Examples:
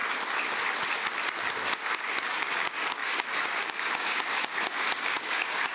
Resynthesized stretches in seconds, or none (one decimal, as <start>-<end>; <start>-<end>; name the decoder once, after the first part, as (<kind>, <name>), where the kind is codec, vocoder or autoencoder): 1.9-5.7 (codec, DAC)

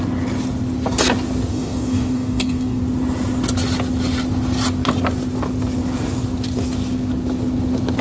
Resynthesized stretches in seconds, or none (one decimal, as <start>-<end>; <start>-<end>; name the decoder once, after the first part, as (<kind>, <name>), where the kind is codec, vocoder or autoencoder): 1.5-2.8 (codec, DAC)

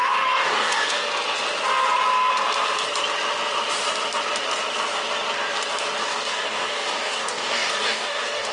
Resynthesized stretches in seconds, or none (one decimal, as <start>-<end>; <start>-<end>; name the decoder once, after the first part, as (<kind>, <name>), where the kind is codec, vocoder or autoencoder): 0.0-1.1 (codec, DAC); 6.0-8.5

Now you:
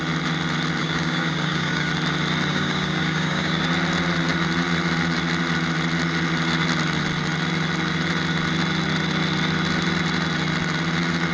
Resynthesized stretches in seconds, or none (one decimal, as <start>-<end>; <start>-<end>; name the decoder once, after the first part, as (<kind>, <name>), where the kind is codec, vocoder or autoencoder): 0.8-1.9 (codec, DAC); 2.5-3.6

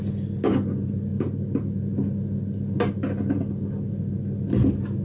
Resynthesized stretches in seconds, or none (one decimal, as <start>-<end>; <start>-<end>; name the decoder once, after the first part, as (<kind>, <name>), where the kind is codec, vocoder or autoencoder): none